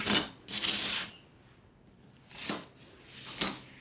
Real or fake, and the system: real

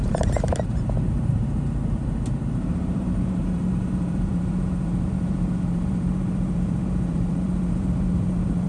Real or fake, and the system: fake, vocoder, BigVGAN v2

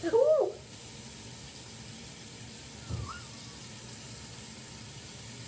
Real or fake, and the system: real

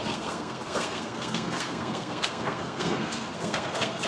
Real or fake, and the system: fake, codec, SNAC